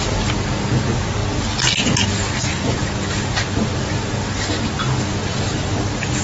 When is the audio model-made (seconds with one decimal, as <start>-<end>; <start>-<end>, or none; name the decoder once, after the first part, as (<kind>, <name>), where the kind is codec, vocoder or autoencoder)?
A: none